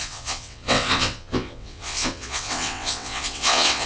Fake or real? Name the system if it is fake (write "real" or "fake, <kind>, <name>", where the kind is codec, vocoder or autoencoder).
fake, vocoder, WaveNeXt